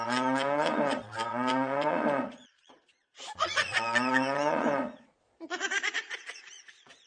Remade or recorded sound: remade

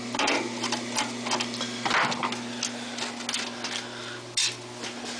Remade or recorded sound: recorded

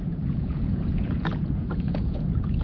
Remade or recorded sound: remade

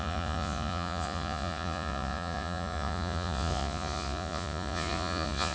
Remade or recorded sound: remade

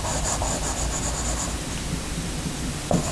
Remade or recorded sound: recorded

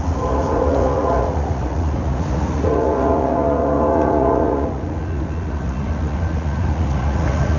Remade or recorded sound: remade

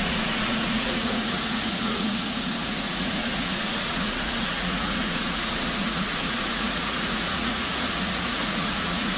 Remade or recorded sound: remade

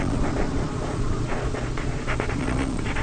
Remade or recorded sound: remade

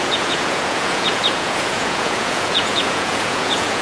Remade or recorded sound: remade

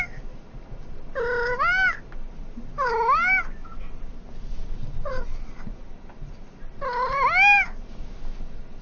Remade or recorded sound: recorded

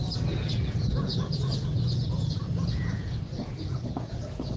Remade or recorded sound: remade